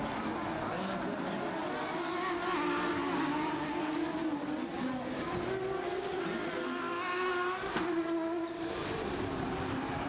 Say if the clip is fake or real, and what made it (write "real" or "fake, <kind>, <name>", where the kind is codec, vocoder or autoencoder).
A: real